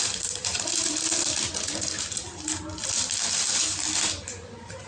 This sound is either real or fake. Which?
real